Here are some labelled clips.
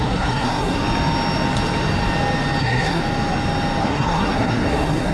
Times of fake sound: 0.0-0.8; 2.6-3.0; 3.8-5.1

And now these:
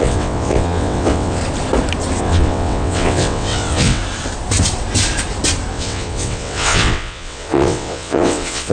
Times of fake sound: 0.0-1.4; 2.2-4.0; 5.7-8.7

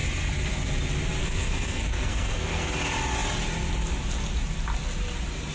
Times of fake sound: 1.2-2.7

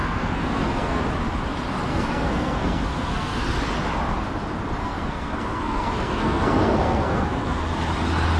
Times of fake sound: 0.0-1.0; 1.9-3.4; 4.8-7.6

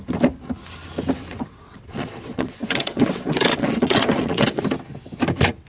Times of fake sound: 1.2-4.6

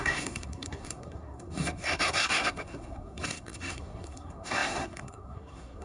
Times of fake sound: 0.0-5.8